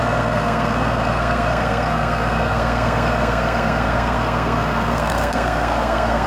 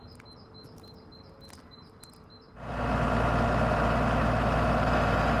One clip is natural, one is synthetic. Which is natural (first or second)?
second